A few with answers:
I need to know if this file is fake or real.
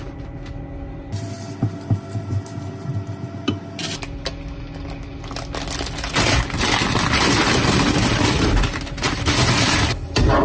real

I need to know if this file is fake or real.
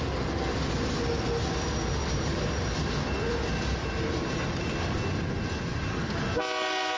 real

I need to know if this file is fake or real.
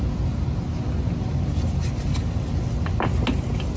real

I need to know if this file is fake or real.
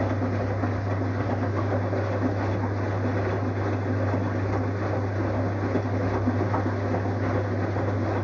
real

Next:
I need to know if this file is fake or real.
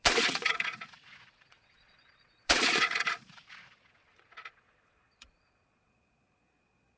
fake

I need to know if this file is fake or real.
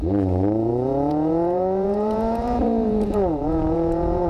fake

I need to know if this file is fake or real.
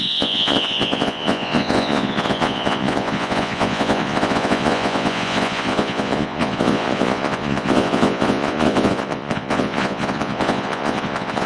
fake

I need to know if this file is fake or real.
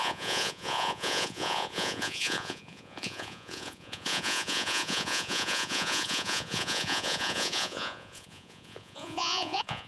fake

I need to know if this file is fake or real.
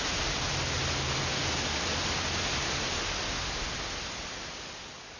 real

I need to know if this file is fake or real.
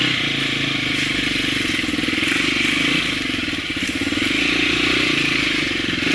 real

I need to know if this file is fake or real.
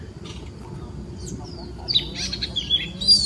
real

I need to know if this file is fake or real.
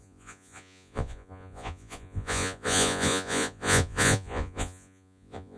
fake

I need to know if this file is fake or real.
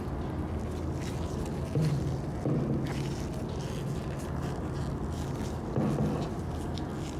real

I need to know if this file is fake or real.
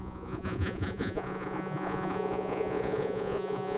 fake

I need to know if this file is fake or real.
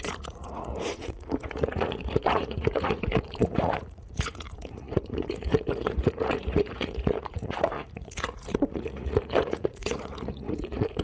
fake